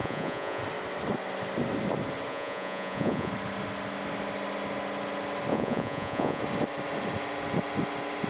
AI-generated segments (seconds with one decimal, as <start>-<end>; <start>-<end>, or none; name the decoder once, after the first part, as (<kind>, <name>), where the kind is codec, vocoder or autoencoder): 0.0-0.6 (vocoder, Vocos); 2.3-3.3; 5.5-6.4